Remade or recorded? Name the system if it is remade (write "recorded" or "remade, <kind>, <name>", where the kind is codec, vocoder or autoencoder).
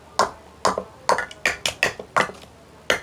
recorded